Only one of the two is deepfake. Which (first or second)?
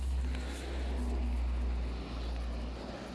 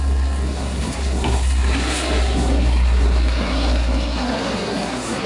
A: second